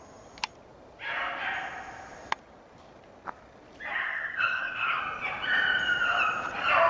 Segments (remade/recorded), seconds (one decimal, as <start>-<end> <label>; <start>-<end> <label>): 0.0-3.9 recorded; 3.9-5.0 remade; 5.0-6.9 recorded